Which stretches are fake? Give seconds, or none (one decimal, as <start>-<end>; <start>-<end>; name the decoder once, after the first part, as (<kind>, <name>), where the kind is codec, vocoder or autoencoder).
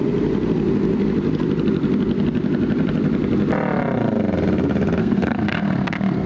5.0-6.3 (codec, SNAC)